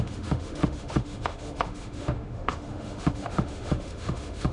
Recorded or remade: remade